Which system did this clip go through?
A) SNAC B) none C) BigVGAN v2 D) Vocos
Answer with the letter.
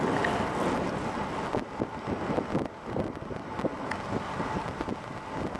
B